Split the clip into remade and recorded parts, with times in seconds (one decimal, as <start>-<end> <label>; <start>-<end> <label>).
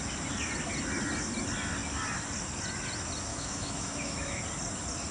0.0-3.3 recorded; 3.3-4.4 remade; 4.4-5.1 recorded